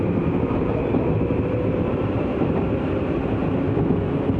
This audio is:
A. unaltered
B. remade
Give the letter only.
B